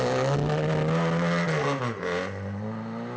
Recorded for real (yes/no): yes